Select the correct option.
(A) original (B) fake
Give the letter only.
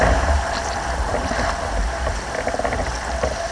A